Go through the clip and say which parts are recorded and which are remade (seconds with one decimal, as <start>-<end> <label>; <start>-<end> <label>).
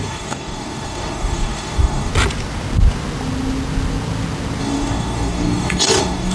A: 0.0-2.1 remade; 2.1-4.6 recorded; 4.6-6.3 remade